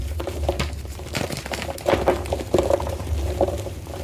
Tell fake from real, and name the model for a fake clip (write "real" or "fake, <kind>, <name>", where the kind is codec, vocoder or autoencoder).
fake, vocoder, BigVGAN v2